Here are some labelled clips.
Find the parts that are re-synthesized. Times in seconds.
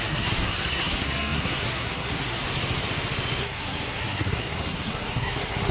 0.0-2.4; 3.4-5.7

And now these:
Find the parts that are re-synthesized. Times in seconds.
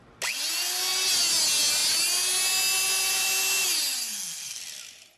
4.0-4.6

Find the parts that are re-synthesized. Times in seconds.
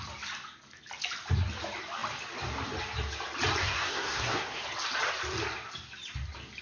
3.6-4.6